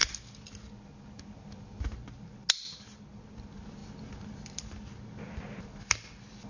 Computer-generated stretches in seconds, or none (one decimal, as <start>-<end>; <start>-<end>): none

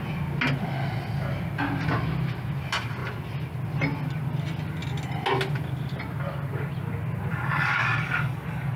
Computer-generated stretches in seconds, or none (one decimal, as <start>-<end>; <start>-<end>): 7.3-8.8

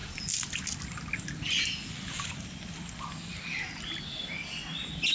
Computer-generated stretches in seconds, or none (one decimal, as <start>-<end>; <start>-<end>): none